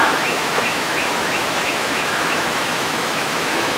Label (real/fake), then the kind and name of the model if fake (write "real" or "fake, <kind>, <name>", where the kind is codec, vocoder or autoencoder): fake, autoencoder, DAC-VAE